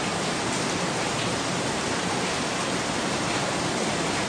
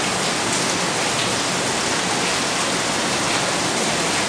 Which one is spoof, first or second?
first